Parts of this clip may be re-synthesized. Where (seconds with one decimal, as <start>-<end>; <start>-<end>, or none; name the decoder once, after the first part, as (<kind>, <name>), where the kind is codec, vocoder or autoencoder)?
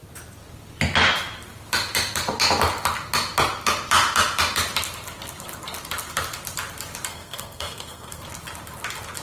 7.1-8.2 (codec, SNAC)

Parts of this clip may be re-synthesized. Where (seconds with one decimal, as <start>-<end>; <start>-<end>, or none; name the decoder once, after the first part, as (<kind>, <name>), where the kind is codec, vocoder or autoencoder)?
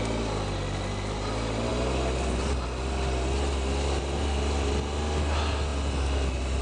none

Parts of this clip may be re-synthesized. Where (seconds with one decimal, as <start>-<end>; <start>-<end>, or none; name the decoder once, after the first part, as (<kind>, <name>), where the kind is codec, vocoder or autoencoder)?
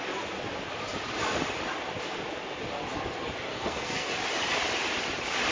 3.5-4.1 (codec, SNAC)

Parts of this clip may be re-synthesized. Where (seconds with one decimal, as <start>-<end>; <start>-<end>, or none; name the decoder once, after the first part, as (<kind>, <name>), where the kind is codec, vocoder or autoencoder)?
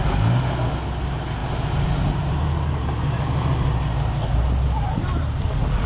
none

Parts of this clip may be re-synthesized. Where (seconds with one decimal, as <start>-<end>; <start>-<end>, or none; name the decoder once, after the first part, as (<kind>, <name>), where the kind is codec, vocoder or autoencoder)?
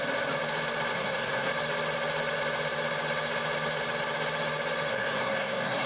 0.9-1.5 (codec, SNAC); 4.9-5.9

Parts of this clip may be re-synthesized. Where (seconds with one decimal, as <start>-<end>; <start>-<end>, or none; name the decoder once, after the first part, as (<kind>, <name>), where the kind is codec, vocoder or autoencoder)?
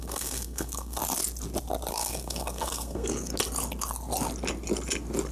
0.0-1.0 (codec, SNAC); 1.9-3.3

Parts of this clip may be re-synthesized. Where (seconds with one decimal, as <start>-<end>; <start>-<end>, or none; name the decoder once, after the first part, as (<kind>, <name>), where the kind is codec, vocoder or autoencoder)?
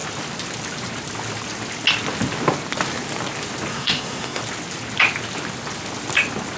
3.7-4.4 (codec, SNAC)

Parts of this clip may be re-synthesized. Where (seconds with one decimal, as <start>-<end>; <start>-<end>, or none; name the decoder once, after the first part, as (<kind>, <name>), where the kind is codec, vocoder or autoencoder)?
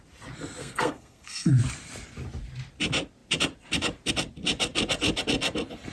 0.6-1.5 (codec, SNAC)